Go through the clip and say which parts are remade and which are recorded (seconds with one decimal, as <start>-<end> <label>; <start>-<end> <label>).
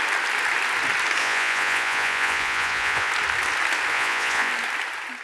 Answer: 0.0-1.2 recorded; 1.2-3.1 remade; 3.1-3.9 recorded; 3.9-4.5 remade; 4.5-5.2 recorded